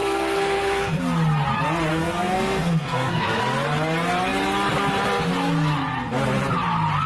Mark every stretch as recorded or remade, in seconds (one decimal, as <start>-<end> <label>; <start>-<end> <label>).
0.0-1.0 remade; 1.0-1.9 recorded; 1.9-3.4 remade; 3.4-7.1 recorded